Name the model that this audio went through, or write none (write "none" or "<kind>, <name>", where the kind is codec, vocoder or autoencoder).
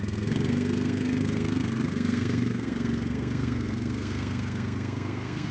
codec, SNAC